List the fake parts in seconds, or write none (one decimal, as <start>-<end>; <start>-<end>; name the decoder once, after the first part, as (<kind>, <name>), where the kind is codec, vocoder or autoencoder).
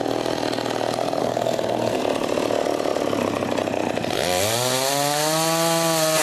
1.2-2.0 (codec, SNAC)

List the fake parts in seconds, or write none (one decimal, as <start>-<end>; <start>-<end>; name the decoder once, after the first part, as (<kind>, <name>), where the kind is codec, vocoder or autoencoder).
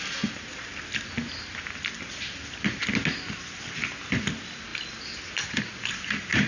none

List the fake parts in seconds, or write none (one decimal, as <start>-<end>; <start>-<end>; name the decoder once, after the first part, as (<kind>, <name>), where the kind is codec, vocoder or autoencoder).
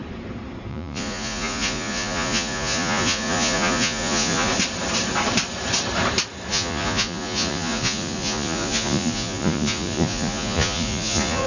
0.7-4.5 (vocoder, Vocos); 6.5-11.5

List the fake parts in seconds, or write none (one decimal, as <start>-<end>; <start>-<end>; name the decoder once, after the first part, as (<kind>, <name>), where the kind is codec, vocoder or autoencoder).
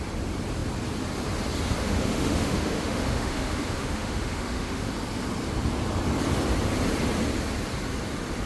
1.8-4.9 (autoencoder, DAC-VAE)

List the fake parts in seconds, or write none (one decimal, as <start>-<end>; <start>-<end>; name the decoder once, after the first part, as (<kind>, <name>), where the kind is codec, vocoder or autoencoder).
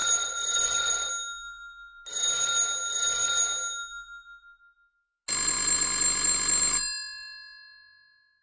0.0-1.1 (vocoder, Vocos)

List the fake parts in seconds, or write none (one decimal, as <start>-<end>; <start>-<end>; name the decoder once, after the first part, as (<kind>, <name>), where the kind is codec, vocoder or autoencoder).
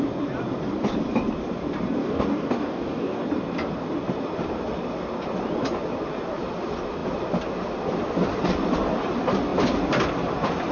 2.0-3.2 (codec, DAC)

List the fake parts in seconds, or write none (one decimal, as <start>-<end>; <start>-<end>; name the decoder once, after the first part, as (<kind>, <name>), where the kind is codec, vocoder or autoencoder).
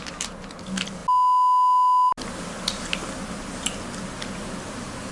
none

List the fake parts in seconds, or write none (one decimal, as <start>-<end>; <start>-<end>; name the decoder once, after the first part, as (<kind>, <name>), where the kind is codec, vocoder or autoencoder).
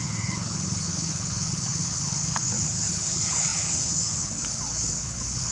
0.0-5.5 (codec, HILCodec)